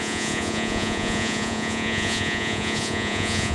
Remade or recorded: remade